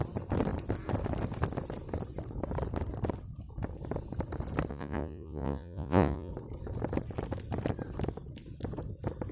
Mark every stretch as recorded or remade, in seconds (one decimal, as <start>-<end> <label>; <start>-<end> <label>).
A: 0.0-4.7 recorded; 4.7-6.3 remade; 6.3-9.3 recorded